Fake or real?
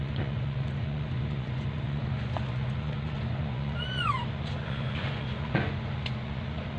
fake